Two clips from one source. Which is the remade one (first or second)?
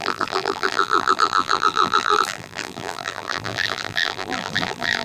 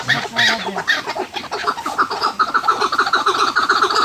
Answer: first